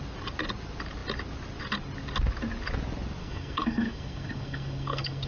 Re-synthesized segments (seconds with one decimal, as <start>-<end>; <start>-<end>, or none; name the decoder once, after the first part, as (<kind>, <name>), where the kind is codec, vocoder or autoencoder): 3.2-5.3 (codec, SNAC)